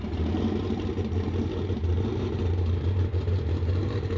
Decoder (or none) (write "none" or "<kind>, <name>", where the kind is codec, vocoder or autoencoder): vocoder, BigVGAN v2